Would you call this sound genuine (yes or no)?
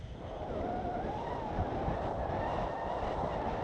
yes